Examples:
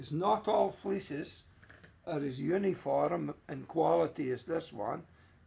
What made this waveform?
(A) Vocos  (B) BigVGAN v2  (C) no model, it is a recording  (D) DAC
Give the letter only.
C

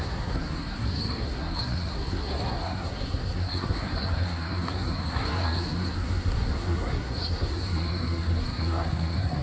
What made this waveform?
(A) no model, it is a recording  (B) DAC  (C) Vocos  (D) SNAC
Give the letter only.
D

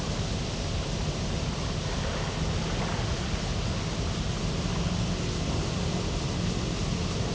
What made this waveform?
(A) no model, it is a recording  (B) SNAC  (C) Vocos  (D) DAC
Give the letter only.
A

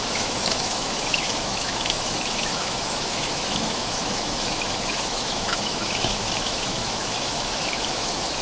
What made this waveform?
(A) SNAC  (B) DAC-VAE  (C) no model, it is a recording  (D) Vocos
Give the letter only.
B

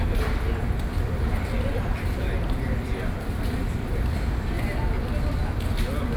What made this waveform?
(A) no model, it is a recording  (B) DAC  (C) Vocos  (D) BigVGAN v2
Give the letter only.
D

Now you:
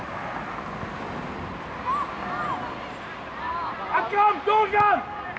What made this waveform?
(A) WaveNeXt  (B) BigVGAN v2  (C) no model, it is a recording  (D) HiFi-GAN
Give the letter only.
C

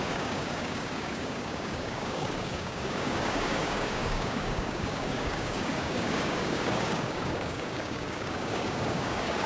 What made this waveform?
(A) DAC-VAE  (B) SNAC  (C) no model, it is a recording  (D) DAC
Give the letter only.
D